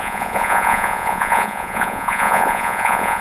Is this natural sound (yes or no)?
no